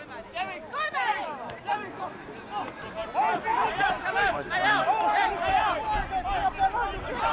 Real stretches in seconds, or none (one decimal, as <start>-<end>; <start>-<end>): 0.0-1.1; 2.0-3.5; 4.5-7.3